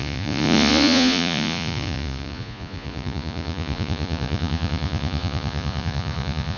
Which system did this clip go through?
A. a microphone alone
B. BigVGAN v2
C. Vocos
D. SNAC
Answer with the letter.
C